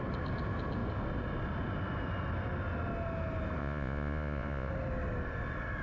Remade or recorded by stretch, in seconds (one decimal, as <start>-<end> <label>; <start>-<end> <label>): 0.0-3.6 recorded; 3.6-4.7 remade; 4.7-5.8 recorded